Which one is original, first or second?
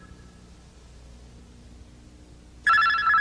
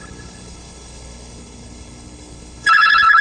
first